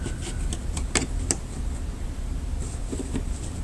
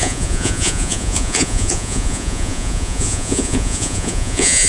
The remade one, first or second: second